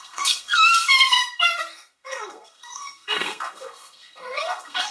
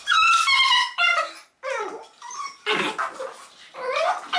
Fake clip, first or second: first